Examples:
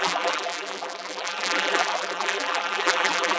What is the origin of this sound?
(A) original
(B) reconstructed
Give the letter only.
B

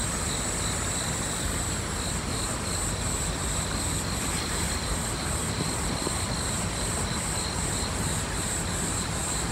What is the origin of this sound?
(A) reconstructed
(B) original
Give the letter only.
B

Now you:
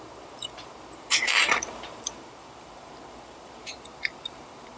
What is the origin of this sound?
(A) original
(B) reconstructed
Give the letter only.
B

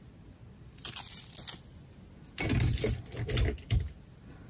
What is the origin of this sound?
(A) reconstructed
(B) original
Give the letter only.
B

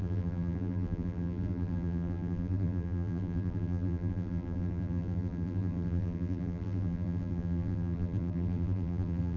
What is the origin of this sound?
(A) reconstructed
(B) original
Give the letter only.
A